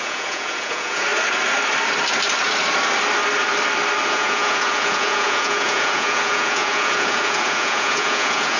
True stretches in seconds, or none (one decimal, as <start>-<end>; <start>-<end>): 1.1-4.1